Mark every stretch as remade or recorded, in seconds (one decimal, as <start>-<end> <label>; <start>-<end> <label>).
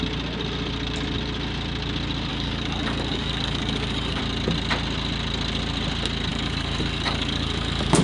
0.0-2.3 recorded; 2.3-4.2 remade; 4.2-6.3 recorded; 6.3-8.0 remade